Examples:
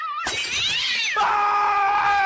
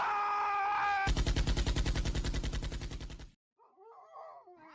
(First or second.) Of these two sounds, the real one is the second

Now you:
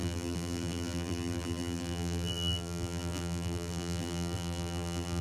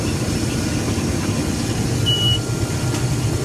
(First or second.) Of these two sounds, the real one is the second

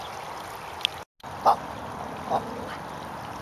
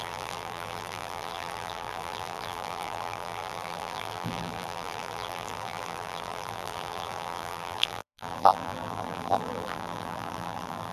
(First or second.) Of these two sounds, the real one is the first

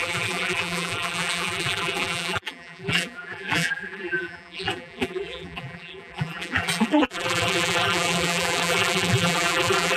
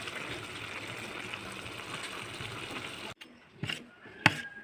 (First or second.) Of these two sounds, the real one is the second